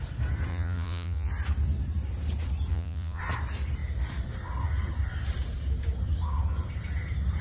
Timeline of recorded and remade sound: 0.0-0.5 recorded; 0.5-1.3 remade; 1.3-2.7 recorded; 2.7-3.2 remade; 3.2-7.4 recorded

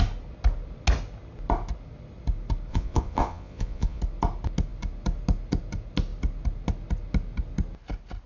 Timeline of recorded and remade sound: 0.0-2.7 recorded; 2.7-4.0 remade; 4.0-8.3 recorded

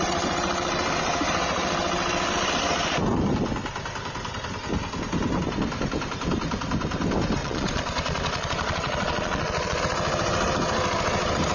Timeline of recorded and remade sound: 0.0-7.4 recorded; 7.4-9.8 remade; 9.8-11.5 recorded

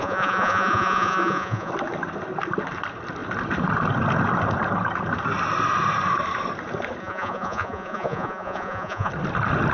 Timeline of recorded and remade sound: 0.0-1.7 remade; 1.7-7.0 recorded; 7.0-9.1 remade; 9.1-9.7 recorded

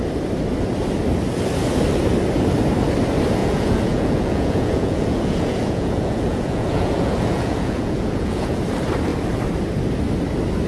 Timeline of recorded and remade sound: 0.0-3.4 recorded; 3.4-8.6 remade; 8.6-10.7 recorded